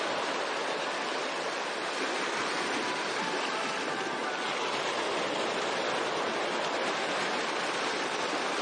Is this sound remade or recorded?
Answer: recorded